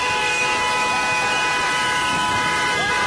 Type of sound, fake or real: real